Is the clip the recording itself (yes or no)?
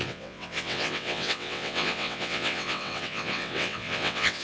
no